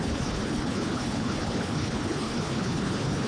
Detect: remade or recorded remade